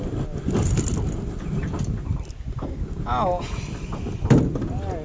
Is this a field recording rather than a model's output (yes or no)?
yes